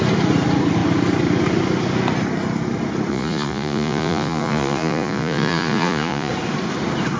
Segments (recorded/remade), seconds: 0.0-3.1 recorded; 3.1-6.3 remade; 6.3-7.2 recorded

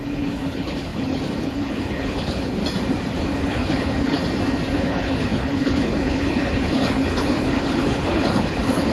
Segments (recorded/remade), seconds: 0.0-2.6 remade; 2.6-3.2 recorded; 3.2-4.2 remade; 4.2-4.8 recorded; 4.8-8.9 remade